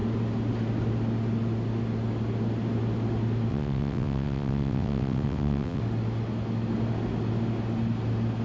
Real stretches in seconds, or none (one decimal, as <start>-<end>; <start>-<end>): 0.0-3.5; 5.8-8.4